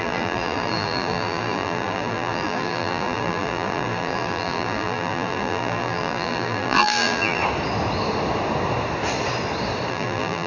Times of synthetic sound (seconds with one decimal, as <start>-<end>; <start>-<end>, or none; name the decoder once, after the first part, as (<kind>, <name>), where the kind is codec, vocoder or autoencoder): 0.0-7.4 (vocoder, BigVGAN v2); 9.9-10.5